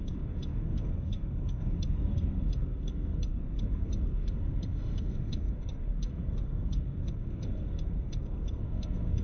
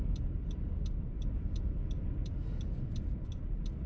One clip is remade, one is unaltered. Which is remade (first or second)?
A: first